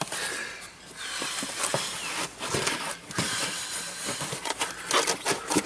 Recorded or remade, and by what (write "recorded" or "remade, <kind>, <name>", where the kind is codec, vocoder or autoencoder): recorded